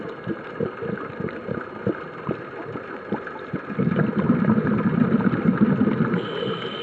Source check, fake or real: real